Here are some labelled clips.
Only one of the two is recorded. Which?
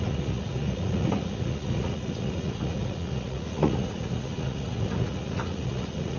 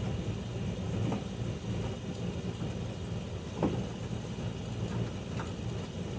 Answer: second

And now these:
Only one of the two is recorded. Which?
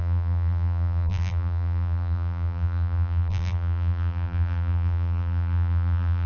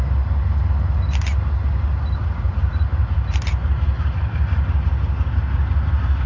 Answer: second